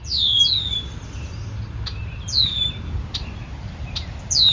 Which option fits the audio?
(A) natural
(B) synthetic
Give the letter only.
A